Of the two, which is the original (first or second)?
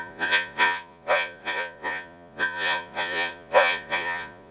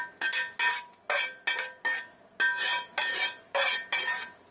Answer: second